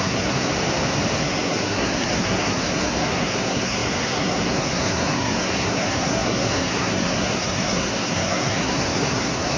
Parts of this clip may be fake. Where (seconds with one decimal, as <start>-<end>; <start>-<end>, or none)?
0.0-0.5; 1.2-9.6